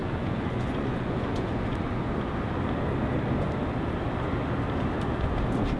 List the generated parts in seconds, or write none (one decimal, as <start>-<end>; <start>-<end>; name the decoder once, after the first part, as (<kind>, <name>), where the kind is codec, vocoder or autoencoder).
0.0-2.0 (vocoder, Vocos)